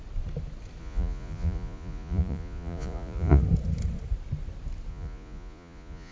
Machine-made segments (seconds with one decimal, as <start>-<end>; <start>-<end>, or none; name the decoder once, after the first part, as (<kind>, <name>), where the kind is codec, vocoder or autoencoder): 0.8-3.4 (vocoder, Vocos); 4.9-6.1